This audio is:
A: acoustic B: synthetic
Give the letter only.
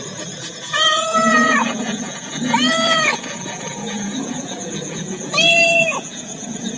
B